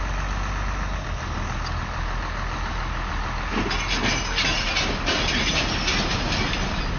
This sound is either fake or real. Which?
real